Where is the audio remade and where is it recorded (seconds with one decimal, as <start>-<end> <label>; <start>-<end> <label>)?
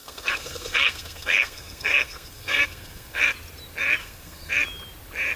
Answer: 0.0-3.2 remade; 3.2-4.0 recorded; 4.0-4.5 remade; 4.5-5.4 recorded